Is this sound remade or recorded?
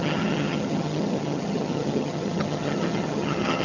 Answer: remade